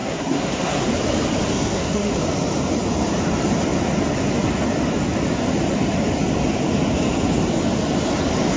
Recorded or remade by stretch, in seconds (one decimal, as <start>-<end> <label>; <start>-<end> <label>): 0.0-0.9 remade; 0.9-1.5 recorded; 1.5-2.2 remade; 2.2-8.6 recorded